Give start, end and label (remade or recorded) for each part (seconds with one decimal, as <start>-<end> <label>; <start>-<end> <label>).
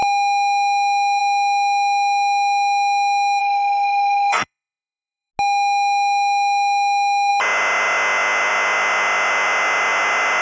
0.0-3.4 recorded; 3.4-5.3 remade; 5.3-10.4 recorded